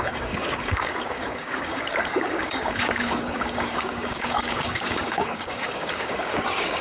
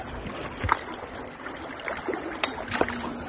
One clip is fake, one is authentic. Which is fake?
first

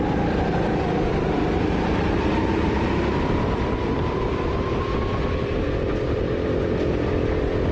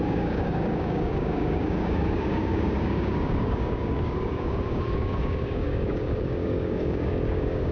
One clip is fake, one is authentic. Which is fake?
second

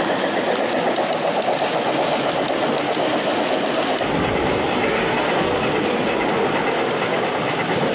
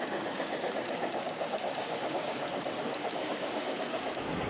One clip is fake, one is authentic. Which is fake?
second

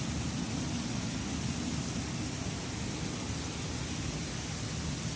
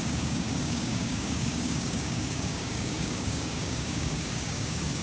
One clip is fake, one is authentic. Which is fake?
second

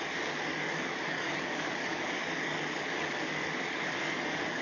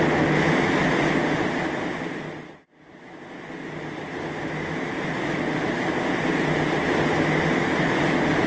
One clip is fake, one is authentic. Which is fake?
first